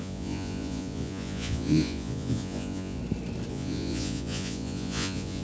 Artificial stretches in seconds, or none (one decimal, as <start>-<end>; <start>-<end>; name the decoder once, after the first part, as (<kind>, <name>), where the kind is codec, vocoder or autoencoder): 0.0-3.0 (vocoder, Vocos); 3.5-5.4